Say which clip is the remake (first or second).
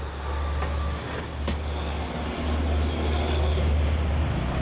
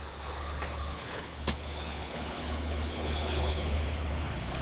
second